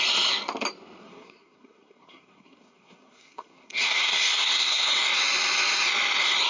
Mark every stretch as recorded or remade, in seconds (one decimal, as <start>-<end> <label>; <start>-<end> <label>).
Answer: 0.0-1.0 recorded; 1.0-4.9 remade; 4.9-6.5 recorded